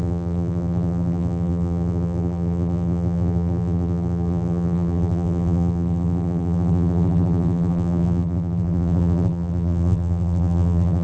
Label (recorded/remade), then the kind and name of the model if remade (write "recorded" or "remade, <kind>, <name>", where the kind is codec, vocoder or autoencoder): remade, vocoder, BigVGAN v2